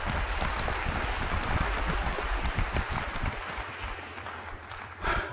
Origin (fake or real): real